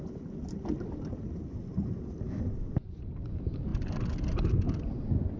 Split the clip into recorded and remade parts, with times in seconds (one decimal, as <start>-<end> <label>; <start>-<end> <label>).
0.0-5.4 recorded